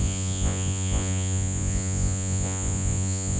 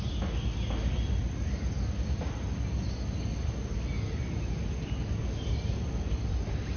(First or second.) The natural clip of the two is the second